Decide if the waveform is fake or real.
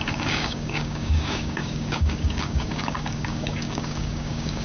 fake